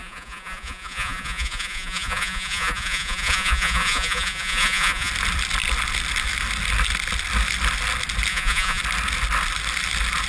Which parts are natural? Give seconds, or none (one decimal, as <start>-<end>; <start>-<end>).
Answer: 5.1-8.3; 8.8-10.3

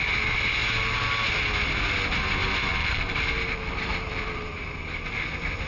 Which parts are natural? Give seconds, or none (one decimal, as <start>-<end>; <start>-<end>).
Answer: 0.0-2.7; 5.2-5.7

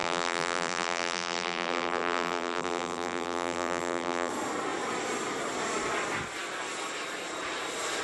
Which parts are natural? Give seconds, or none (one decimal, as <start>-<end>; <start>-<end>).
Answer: 4.3-8.0